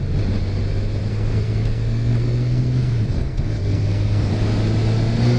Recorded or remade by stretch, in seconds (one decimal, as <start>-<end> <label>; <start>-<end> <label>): 0.0-1.1 recorded; 1.1-4.3 remade; 4.3-5.4 recorded